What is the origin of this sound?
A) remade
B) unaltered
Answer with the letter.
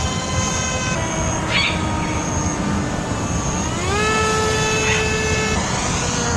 B